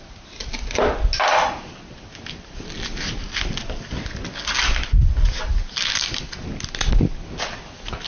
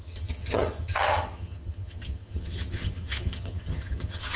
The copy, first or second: second